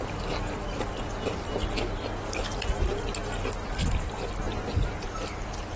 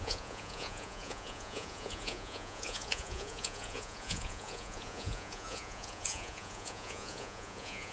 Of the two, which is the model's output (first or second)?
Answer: second